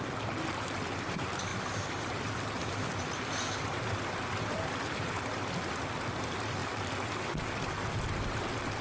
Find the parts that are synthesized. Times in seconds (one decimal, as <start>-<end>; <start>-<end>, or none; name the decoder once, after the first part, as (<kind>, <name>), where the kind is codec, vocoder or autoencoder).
none